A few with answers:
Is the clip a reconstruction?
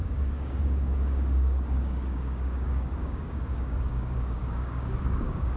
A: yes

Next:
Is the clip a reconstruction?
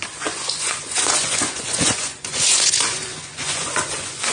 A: yes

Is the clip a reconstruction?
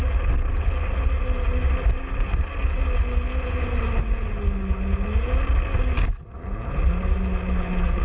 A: no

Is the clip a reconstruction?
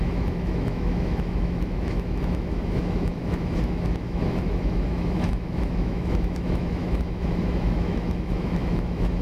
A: yes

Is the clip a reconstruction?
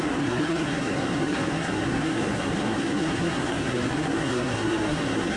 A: yes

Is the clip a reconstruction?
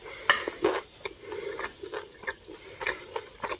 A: no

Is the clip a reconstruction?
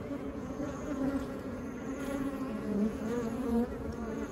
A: yes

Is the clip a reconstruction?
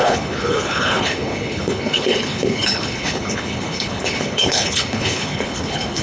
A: yes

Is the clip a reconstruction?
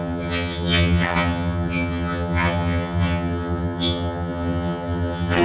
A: yes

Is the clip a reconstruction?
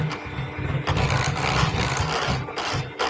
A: no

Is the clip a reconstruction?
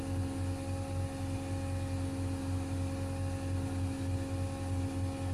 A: no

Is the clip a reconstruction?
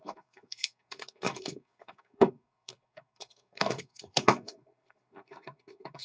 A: yes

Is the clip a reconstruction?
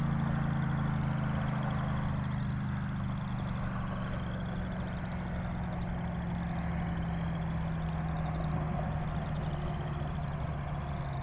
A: no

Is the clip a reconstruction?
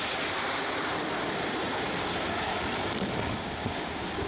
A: no